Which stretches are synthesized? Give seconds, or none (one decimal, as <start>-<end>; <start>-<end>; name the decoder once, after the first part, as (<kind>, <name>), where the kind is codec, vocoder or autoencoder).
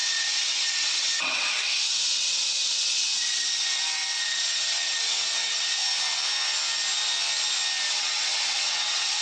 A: 0.0-5.8 (vocoder, WaveNeXt); 7.9-9.2